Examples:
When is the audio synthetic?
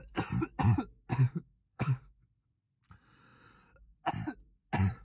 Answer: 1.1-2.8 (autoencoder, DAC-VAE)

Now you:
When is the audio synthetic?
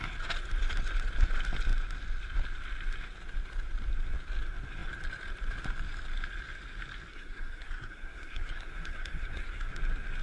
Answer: 7.1-9.7 (codec, SNAC)